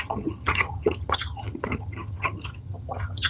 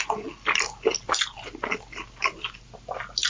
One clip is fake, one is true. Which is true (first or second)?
second